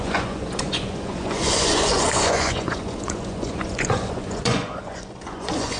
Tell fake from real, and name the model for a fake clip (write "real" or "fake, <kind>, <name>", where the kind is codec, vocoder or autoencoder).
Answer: fake, vocoder, Vocos